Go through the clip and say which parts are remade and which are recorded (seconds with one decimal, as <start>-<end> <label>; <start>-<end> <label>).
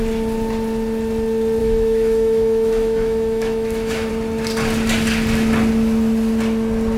0.0-1.6 recorded; 1.6-4.1 remade; 4.1-7.0 recorded